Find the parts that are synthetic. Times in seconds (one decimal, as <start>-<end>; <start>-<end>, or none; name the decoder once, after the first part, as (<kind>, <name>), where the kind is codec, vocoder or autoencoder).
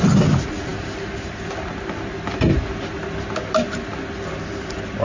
none